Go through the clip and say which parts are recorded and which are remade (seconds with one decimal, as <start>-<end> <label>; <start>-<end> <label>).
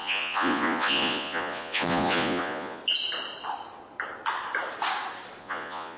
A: 0.0-2.8 remade; 2.8-5.4 recorded; 5.4-6.0 remade